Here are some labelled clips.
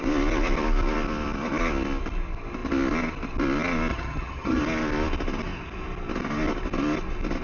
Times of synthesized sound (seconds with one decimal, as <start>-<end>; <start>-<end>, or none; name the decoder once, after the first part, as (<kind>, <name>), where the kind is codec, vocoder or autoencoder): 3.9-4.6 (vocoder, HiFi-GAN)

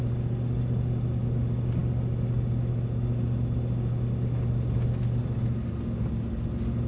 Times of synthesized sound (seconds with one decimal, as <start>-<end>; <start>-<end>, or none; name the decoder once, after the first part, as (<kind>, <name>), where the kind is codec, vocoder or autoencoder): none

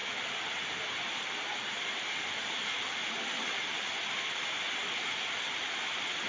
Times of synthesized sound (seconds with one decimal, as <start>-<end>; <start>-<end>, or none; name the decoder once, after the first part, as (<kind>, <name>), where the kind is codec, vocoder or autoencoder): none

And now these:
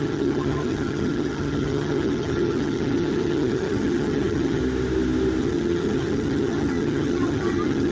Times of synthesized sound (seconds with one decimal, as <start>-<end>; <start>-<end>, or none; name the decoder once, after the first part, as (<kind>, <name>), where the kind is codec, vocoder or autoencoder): 0.0-4.6 (vocoder, HiFi-GAN); 5.4-7.9